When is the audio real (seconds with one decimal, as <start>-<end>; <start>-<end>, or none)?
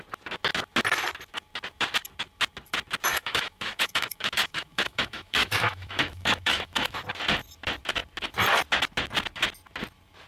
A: 0.0-3.1; 7.0-10.3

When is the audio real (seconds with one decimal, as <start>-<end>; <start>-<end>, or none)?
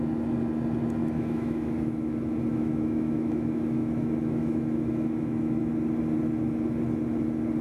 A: 0.0-1.0; 2.1-2.5; 5.7-7.6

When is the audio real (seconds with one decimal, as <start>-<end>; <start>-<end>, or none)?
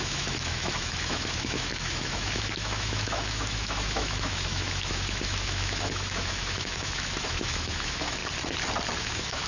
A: 8.2-9.0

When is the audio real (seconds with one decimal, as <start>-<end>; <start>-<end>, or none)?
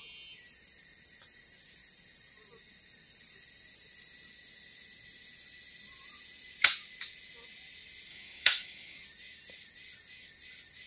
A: 0.0-8.1; 9.0-10.9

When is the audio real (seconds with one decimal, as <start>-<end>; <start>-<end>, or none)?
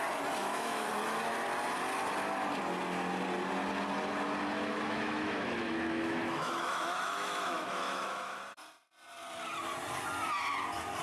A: 0.0-0.4; 0.9-4.7; 8.4-11.0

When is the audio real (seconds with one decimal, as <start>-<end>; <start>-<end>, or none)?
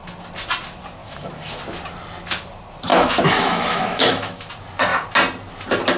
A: 0.0-1.0; 1.6-2.9; 4.5-6.0